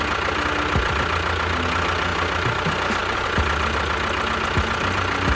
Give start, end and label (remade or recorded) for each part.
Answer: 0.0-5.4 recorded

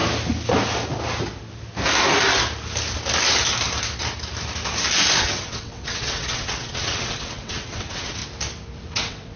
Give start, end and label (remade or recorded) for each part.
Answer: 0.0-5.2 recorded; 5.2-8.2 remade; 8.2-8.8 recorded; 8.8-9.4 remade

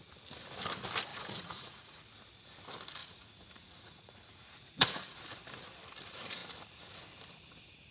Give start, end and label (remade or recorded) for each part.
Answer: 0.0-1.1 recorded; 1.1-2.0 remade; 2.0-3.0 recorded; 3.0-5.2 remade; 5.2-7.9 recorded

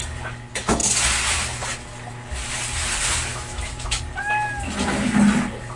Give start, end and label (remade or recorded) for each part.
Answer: 0.0-3.3 recorded; 3.3-4.0 remade; 4.0-5.8 recorded

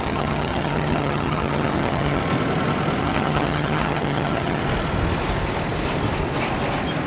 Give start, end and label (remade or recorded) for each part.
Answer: 0.0-2.2 remade; 2.2-3.0 recorded; 3.0-4.6 remade; 4.6-7.1 recorded

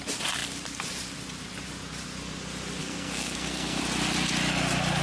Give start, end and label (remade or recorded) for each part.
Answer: 0.0-2.8 recorded; 2.8-3.8 remade; 3.8-5.0 recorded

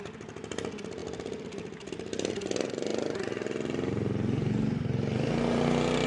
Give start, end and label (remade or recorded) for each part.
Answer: 0.0-6.1 recorded

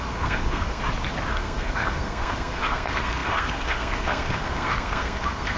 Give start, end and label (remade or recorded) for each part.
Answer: 0.0-0.8 remade; 0.8-1.3 recorded; 1.3-5.6 remade